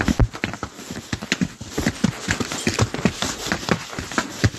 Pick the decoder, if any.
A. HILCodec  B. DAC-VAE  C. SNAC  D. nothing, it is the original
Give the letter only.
D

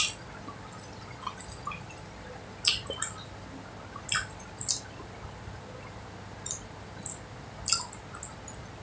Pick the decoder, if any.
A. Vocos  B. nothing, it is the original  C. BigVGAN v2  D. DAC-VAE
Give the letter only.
B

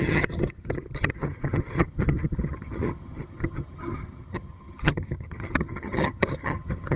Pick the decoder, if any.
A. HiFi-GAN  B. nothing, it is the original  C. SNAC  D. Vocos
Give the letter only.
A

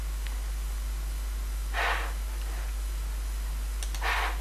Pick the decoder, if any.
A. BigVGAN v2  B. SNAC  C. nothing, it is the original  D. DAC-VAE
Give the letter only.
C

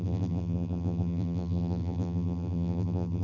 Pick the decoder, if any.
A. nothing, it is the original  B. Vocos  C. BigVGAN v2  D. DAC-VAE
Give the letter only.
C